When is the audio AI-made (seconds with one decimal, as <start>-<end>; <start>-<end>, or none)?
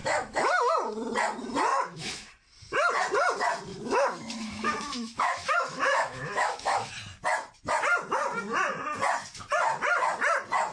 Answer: 0.0-0.7; 1.7-2.3; 3.7-6.9